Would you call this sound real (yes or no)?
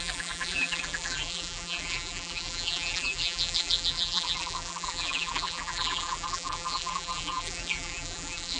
no